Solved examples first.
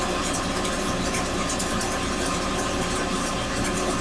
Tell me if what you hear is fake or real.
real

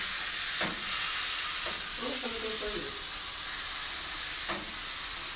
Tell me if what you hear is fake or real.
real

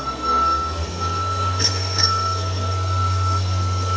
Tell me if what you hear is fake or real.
fake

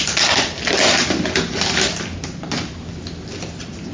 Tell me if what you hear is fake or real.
real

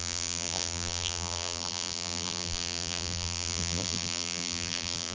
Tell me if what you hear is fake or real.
fake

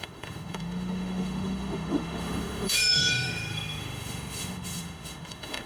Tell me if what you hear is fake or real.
fake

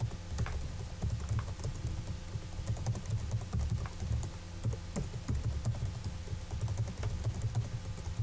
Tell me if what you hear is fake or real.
real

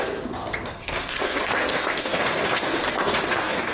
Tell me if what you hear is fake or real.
fake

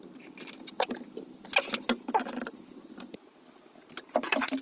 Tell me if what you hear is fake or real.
real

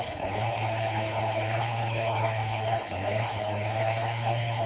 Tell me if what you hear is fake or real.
fake